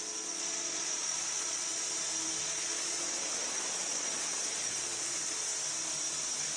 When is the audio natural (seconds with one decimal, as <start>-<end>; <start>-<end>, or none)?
1.7-2.4; 5.5-6.6